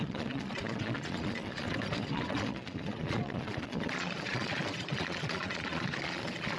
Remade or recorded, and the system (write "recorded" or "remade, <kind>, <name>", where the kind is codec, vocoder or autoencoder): remade, vocoder, Vocos